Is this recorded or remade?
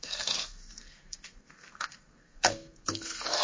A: remade